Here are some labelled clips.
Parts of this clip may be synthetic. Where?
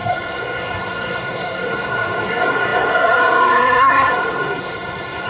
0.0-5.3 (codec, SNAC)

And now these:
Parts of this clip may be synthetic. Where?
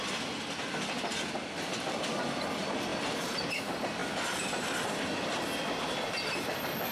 none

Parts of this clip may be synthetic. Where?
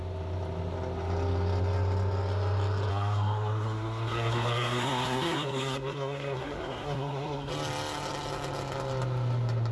2.9-7.5 (codec, SNAC)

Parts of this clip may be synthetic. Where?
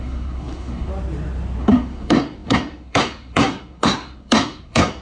0.0-0.9 (codec, SNAC); 1.6-5.0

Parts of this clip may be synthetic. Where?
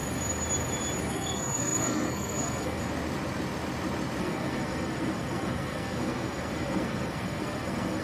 1.1-2.8 (codec, SNAC); 4.2-8.0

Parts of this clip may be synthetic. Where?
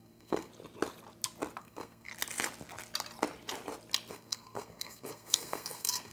0.0-0.5 (codec, SNAC); 1.6-2.1; 4.1-6.1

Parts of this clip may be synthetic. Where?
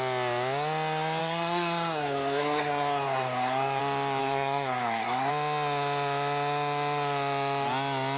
1.2-3.8 (codec, SNAC); 4.2-5.3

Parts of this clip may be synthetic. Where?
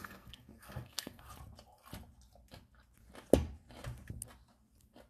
0.0-1.3 (codec, SNAC)